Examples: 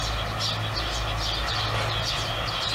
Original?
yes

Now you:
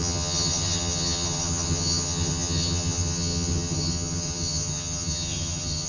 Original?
no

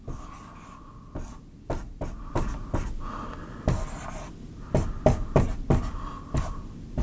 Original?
yes